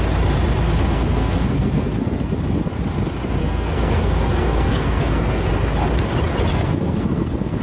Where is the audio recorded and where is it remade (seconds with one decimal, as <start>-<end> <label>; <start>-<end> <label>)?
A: 0.0-0.9 recorded; 0.9-2.3 remade; 2.3-3.4 recorded; 3.4-5.5 remade; 5.5-6.5 recorded; 6.5-7.6 remade